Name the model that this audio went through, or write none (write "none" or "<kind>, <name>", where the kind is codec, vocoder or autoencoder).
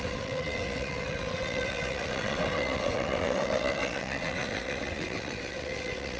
vocoder, WaveNeXt